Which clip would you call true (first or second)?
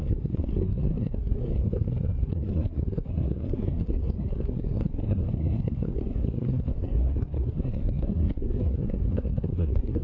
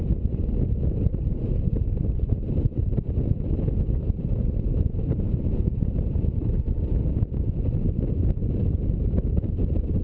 second